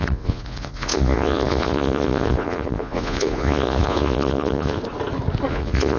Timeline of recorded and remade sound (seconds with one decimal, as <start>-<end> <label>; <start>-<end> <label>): 0.0-4.8 remade; 4.8-5.5 recorded; 5.5-6.0 remade